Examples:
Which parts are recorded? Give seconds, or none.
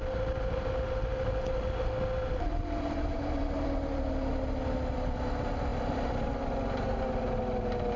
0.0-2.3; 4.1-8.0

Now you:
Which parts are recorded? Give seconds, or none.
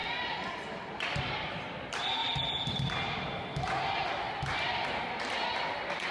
2.2-6.1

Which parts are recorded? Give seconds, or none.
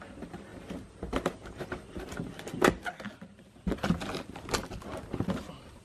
0.0-0.5; 1.6-5.8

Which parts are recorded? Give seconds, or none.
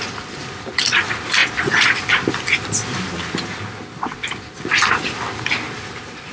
1.4-4.3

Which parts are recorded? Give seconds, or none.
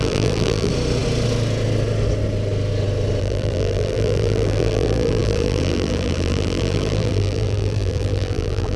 0.7-3.2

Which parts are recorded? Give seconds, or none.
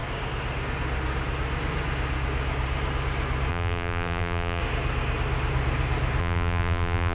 0.0-3.5; 4.6-6.2